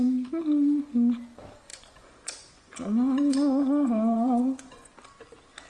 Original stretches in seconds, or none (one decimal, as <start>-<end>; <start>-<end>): 0.0-1.7; 4.9-5.7